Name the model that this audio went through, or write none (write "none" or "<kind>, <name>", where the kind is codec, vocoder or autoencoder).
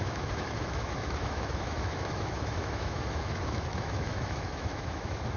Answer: autoencoder, DAC-VAE